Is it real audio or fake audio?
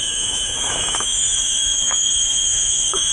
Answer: fake